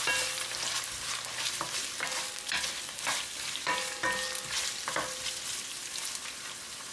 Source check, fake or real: fake